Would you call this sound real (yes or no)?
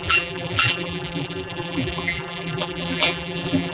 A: no